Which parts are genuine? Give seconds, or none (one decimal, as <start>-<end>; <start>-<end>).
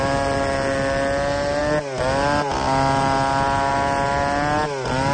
0.0-5.1